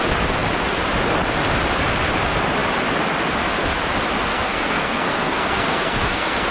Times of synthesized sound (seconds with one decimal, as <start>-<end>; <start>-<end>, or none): 4.3-6.5